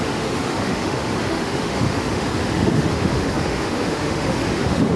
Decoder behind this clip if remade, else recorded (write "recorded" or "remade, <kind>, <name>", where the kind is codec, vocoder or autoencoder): remade, autoencoder, DAC-VAE